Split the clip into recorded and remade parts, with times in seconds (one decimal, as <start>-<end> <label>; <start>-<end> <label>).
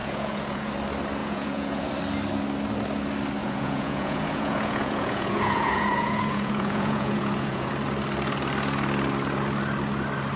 0.0-0.7 remade; 0.7-1.2 recorded; 1.2-1.9 remade; 1.9-3.4 recorded; 3.4-7.7 remade; 7.7-10.4 recorded